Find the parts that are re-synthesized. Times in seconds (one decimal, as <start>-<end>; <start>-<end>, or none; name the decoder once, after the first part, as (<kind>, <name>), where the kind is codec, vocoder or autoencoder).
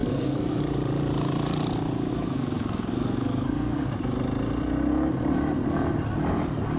0.0-0.6 (codec, SNAC); 2.1-3.9